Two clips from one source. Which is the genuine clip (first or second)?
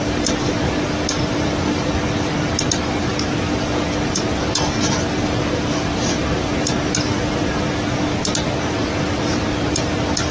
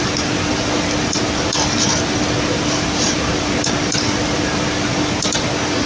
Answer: first